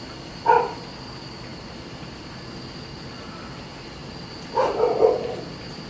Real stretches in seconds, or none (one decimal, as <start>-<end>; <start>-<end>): 0.0-5.9